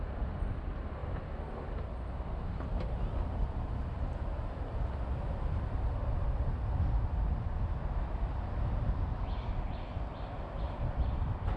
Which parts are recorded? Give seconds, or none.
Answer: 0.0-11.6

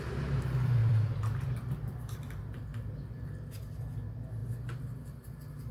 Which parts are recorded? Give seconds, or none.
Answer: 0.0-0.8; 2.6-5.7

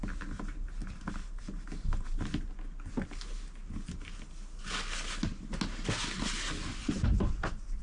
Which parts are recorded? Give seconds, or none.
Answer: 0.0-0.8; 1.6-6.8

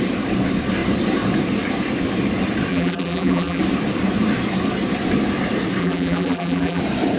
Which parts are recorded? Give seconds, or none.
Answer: 0.0-2.7; 3.6-5.8; 6.8-7.2